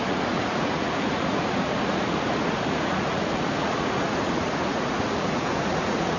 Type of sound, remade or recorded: remade